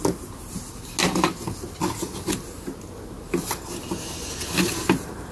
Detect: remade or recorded recorded